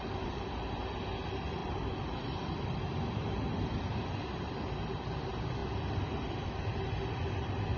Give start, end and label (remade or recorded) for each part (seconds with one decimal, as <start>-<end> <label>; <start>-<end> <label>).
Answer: 0.0-1.6 recorded; 1.6-4.5 remade; 4.5-5.6 recorded; 5.6-6.5 remade; 6.5-7.8 recorded